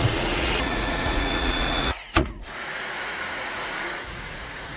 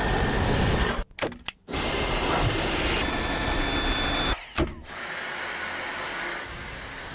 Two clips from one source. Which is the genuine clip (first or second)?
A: second